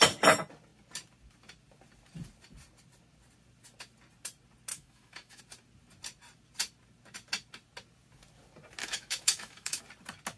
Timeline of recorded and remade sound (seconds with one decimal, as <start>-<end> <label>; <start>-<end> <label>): 0.0-4.7 recorded; 4.7-5.4 remade; 5.4-8.8 recorded; 8.8-9.8 remade; 9.8-10.4 recorded